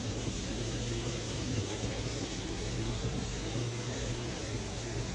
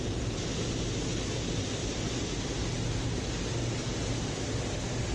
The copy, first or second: first